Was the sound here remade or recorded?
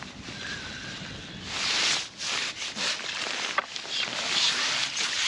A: recorded